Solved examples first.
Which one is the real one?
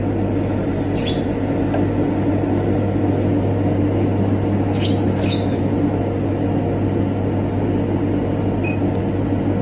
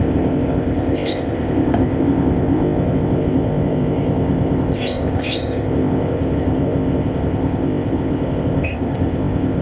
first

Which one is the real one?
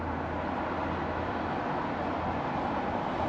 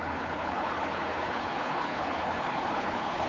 first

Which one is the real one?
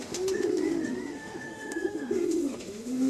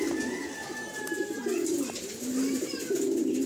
second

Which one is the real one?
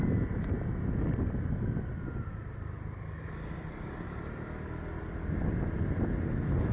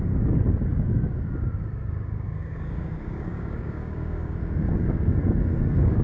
first